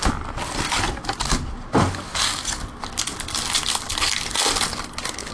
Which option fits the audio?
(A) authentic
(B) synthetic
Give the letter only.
A